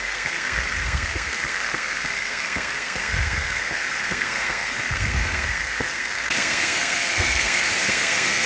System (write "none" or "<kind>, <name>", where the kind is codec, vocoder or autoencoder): codec, SNAC